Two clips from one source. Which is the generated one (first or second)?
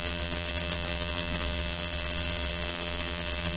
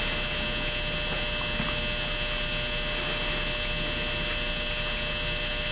first